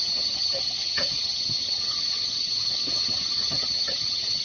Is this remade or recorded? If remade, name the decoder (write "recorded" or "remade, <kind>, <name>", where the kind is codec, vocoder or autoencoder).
remade, vocoder, HiFi-GAN